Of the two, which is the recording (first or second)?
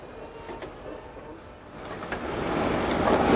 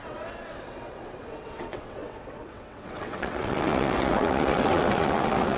first